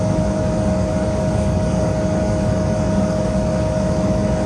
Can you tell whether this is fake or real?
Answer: fake